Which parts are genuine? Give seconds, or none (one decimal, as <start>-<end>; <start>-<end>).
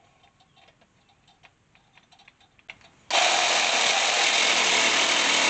0.0-5.5